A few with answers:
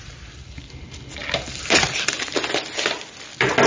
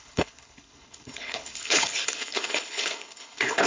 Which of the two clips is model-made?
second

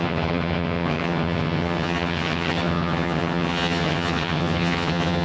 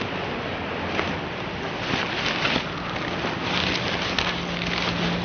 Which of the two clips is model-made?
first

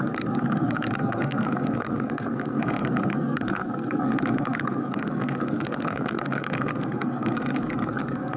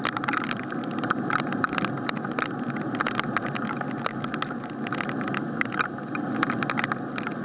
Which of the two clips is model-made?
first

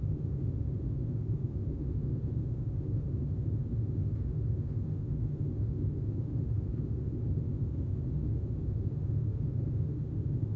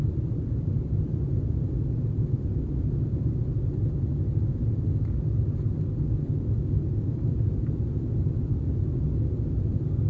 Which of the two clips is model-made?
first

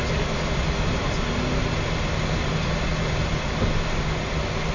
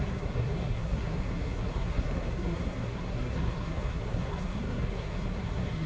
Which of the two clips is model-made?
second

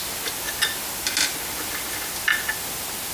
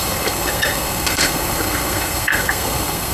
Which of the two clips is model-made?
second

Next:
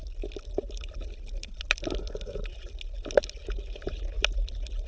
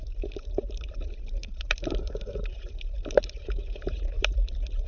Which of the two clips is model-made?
second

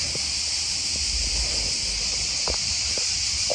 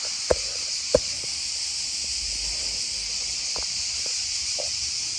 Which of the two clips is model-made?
first